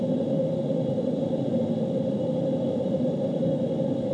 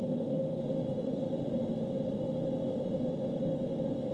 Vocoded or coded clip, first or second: first